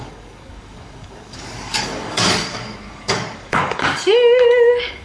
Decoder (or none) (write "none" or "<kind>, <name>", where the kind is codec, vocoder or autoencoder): codec, DAC